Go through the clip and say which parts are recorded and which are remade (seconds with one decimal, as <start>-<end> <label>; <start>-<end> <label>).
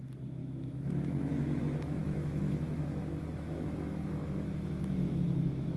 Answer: 0.0-0.4 recorded; 0.4-1.6 remade; 1.6-2.0 recorded; 2.0-5.8 remade